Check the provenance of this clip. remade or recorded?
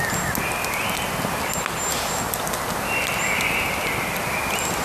recorded